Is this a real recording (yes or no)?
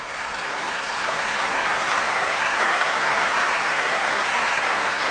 no